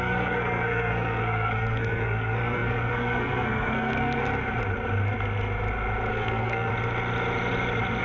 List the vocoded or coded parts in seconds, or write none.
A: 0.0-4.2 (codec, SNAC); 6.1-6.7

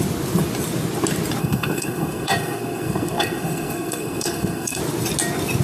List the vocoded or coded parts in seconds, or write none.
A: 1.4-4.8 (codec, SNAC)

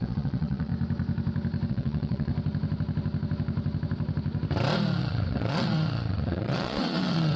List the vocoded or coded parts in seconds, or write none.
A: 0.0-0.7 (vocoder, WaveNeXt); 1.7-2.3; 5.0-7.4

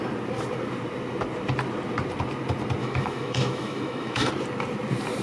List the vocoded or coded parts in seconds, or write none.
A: 2.8-4.3 (autoencoder, DAC-VAE)

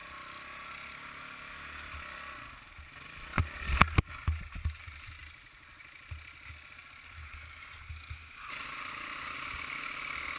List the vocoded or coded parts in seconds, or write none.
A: none

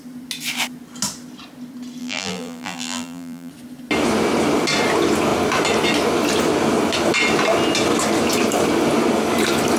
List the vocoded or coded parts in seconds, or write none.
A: 2.0-3.5 (vocoder, BigVGAN v2)

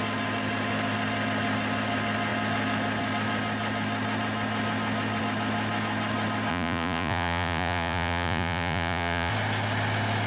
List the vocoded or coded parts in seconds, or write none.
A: 6.5-9.3 (vocoder, Vocos)

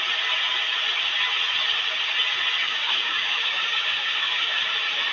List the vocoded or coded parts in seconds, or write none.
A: 2.6-4.6 (codec, DAC)